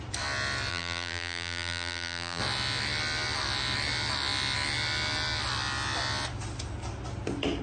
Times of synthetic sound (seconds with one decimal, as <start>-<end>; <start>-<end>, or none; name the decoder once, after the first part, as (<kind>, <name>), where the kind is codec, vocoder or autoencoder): 0.7-2.4 (vocoder, BigVGAN v2)